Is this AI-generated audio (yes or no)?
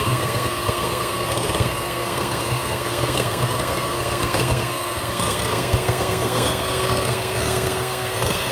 yes